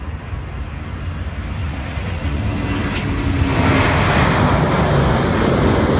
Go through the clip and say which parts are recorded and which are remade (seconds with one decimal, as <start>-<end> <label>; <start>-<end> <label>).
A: 0.0-1.6 recorded; 1.6-2.4 remade; 2.4-6.0 recorded

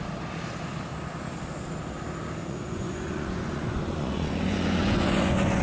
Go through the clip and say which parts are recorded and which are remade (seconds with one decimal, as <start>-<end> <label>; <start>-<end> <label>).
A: 0.0-2.4 recorded; 2.4-5.6 remade

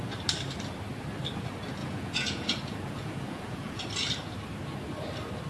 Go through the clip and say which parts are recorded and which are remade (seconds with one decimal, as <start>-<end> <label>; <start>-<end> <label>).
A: 0.0-1.8 recorded; 1.8-3.8 remade; 3.8-5.5 recorded

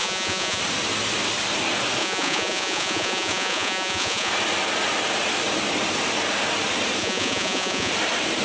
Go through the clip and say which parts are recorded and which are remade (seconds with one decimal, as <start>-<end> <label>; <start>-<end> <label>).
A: 0.0-0.6 remade; 0.6-2.0 recorded; 2.0-4.3 remade; 4.3-7.0 recorded; 7.0-7.9 remade; 7.9-8.4 recorded

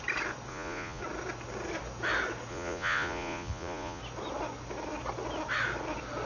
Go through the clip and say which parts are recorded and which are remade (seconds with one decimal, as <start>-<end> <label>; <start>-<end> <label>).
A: 0.0-0.5 recorded; 0.5-1.0 remade; 1.0-2.5 recorded; 2.5-4.0 remade; 4.0-6.3 recorded